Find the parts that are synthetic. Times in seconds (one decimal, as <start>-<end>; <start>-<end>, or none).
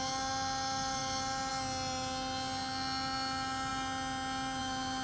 none